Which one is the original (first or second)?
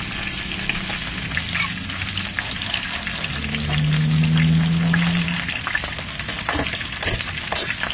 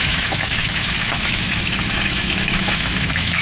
first